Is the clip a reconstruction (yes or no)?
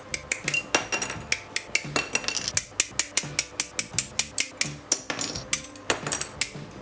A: no